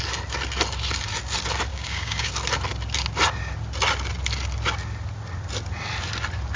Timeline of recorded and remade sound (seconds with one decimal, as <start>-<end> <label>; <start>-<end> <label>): 0.0-1.7 recorded; 1.7-2.3 remade; 2.3-6.6 recorded

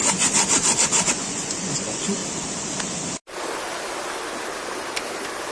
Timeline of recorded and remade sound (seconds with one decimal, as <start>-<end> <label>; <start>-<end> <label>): 0.0-1.1 recorded; 1.1-2.2 remade; 2.2-5.5 recorded